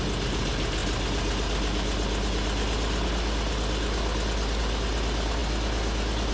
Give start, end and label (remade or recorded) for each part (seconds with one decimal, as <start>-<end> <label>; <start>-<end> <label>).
0.0-6.3 recorded